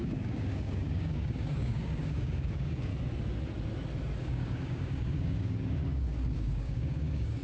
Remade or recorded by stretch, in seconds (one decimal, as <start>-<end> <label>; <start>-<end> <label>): 0.0-2.9 remade; 2.9-4.2 recorded; 4.2-7.4 remade